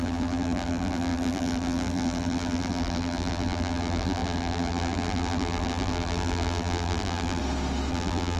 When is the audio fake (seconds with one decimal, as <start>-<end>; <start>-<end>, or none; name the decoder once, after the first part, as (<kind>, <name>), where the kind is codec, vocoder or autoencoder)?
0.0-7.4 (vocoder, BigVGAN v2); 7.9-8.4